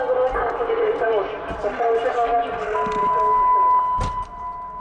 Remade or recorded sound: recorded